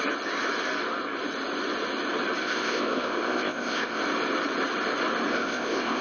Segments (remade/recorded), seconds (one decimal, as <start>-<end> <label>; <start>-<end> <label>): 0.0-2.4 recorded; 2.4-4.0 remade; 4.0-5.3 recorded; 5.3-6.0 remade